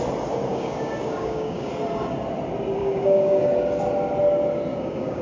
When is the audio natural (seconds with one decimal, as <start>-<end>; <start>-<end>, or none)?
0.0-0.5; 1.7-2.8; 3.4-4.7